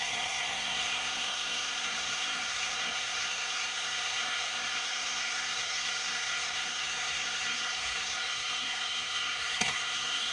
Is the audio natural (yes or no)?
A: no